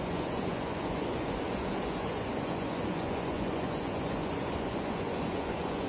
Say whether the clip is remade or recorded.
remade